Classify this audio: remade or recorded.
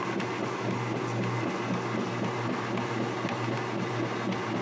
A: recorded